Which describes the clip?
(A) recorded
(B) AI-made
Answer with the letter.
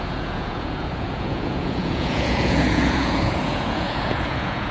B